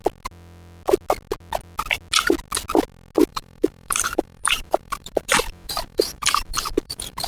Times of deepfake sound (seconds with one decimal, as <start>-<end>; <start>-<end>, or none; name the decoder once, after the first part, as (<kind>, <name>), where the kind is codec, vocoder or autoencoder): 3.3-7.3 (vocoder, BigVGAN v2)